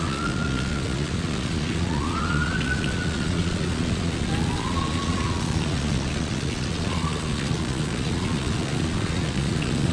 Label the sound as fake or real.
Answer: fake